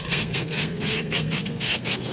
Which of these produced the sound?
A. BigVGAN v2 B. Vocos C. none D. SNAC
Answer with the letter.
D